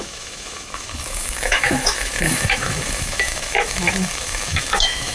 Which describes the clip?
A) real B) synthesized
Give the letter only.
B